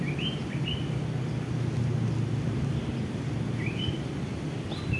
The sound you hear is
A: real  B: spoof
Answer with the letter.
A